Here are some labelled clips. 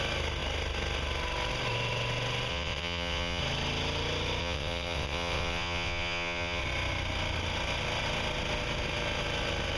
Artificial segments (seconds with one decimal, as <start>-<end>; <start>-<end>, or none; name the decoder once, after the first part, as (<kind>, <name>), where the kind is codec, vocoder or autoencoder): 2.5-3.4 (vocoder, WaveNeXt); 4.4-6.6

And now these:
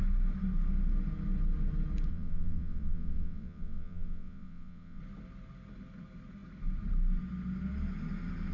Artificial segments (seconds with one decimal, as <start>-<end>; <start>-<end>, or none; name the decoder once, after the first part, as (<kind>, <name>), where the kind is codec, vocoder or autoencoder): 2.1-5.0 (vocoder, WaveNeXt)

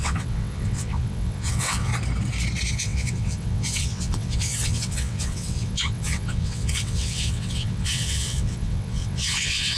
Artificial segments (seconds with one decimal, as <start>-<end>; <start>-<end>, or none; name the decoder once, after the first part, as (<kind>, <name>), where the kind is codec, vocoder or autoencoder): 0.0-1.9 (vocoder, WaveNeXt); 2.7-9.8

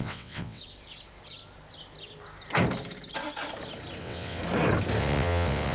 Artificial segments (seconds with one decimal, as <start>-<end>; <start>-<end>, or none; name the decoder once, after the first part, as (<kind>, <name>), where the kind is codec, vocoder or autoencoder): 0.0-0.6 (vocoder, WaveNeXt); 4.0-4.4; 5.0-5.7

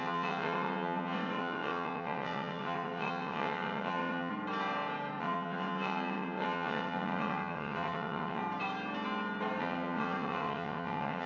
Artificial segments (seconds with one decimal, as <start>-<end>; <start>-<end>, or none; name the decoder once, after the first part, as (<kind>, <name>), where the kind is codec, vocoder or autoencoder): 0.0-4.3 (vocoder, WaveNeXt); 5.2-8.4; 9.6-11.3

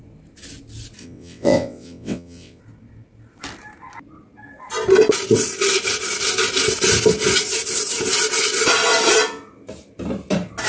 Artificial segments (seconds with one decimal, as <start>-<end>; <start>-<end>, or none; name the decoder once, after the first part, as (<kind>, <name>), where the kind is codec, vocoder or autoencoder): 1.0-2.6 (vocoder, WaveNeXt)

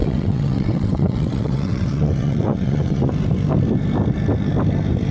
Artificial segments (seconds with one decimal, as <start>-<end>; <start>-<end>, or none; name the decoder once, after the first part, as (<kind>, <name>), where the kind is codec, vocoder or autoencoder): 0.0-3.1 (vocoder, WaveNeXt)

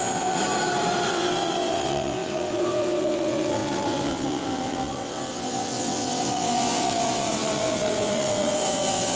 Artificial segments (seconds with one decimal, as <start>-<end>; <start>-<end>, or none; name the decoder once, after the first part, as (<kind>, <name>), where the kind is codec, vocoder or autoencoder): 0.0-0.4 (vocoder, WaveNeXt); 1.1-9.2